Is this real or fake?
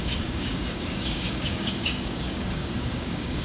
fake